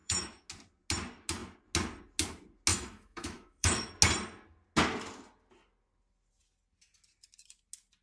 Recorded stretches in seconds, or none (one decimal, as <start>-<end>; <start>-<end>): 0.5-2.7; 3.9-8.0